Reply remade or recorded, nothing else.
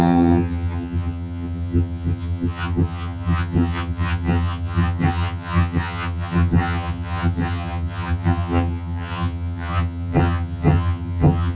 remade